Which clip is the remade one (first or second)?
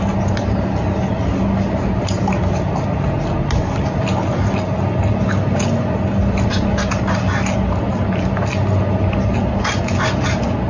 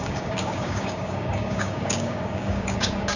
second